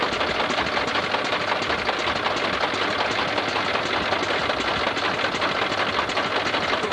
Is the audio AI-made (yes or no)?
no